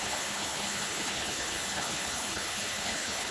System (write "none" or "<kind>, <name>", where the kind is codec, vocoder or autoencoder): codec, HILCodec